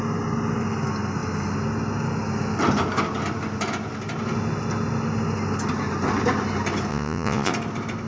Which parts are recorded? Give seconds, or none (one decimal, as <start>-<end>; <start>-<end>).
0.0-6.9; 7.5-8.1